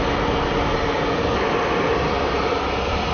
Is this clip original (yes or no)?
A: yes